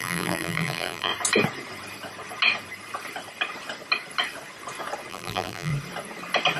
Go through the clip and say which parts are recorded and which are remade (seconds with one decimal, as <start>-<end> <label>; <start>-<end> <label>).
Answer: 0.0-1.1 remade; 1.1-5.1 recorded; 5.1-5.7 remade; 5.7-6.6 recorded